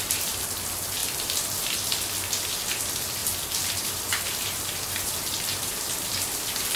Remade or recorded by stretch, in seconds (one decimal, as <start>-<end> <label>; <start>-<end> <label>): 0.0-1.0 recorded; 1.0-2.0 remade; 2.0-3.2 recorded; 3.2-6.8 remade